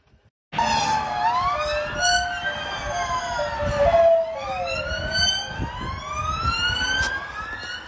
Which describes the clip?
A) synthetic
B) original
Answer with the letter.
B